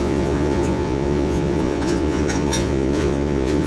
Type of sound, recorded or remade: remade